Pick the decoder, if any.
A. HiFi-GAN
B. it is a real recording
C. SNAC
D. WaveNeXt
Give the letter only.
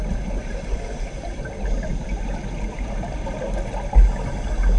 B